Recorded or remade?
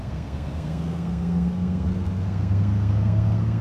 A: remade